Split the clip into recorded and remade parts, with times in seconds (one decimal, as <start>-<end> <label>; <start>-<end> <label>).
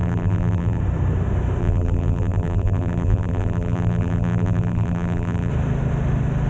0.0-0.8 remade; 0.8-1.6 recorded; 1.6-5.5 remade; 5.5-6.5 recorded